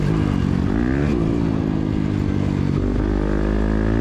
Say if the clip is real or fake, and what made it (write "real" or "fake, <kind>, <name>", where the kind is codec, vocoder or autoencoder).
real